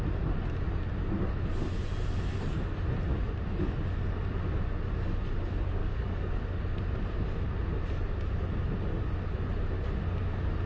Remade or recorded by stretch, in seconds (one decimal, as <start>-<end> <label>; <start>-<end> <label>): 0.0-5.8 recorded; 5.8-6.3 remade; 6.3-10.7 recorded